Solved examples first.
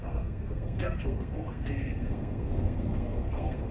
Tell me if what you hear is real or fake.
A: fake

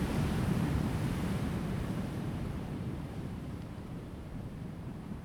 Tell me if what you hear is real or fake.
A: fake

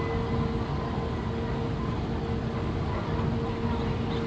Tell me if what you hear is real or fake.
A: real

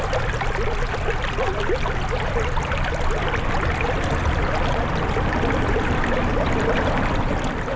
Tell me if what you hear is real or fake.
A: real